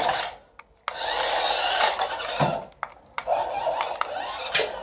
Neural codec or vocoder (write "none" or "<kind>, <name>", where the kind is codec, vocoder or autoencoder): none